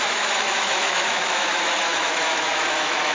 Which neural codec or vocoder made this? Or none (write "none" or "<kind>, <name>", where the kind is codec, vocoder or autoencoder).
autoencoder, DAC-VAE